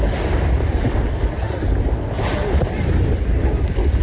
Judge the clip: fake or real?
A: real